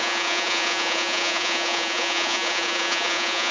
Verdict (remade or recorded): remade